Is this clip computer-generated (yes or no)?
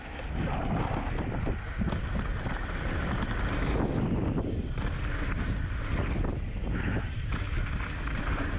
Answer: no